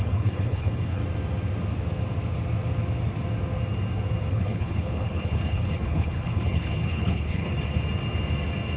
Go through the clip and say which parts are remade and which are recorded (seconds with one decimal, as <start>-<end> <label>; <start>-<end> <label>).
0.0-1.0 remade; 1.0-4.3 recorded; 4.3-7.5 remade; 7.5-8.8 recorded